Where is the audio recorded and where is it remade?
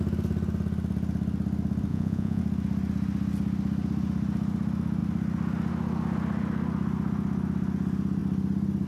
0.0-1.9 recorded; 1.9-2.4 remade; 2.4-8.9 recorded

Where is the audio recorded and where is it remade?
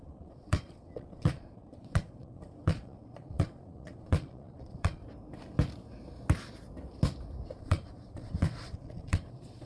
0.0-5.0 remade; 5.0-7.6 recorded; 7.6-9.7 remade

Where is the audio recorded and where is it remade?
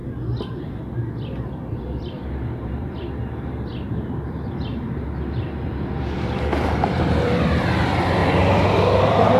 0.0-0.5 recorded; 0.5-9.4 remade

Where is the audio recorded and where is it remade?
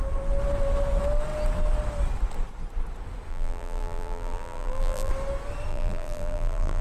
0.0-3.3 recorded; 3.3-5.1 remade; 5.1-5.7 recorded; 5.7-6.8 remade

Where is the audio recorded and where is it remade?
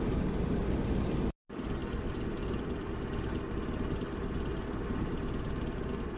0.0-6.2 remade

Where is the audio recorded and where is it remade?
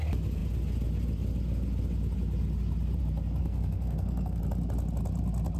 0.0-3.4 recorded; 3.4-4.4 remade; 4.4-5.6 recorded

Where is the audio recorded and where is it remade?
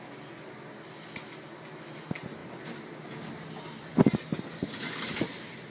0.0-5.7 recorded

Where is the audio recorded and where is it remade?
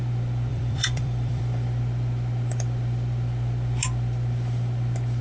0.0-0.5 recorded; 0.5-1.4 remade; 1.4-5.2 recorded